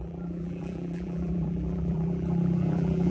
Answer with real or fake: fake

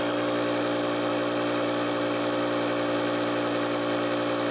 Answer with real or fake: real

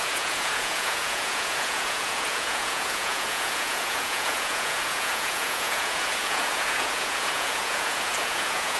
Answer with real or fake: fake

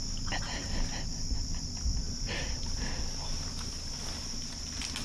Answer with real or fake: real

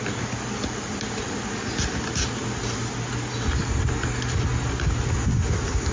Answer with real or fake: real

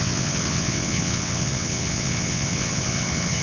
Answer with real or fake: fake